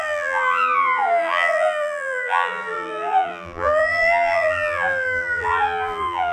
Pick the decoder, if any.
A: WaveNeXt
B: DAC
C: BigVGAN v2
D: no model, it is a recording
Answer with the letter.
C